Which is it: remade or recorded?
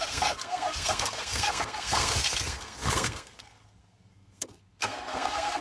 remade